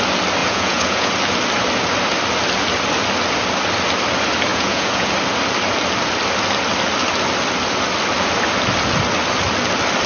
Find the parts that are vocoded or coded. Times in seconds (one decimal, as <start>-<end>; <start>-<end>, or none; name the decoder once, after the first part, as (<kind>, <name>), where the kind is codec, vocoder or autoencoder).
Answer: 0.4-1.1 (vocoder, Vocos); 4.5-5.1